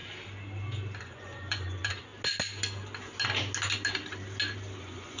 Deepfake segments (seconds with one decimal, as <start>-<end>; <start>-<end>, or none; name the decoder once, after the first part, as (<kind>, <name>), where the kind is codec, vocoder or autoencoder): 1.0-2.1 (vocoder, Vocos); 4.8-5.2